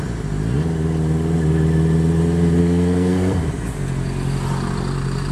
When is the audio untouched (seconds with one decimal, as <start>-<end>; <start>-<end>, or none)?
0.0-2.6; 3.4-5.3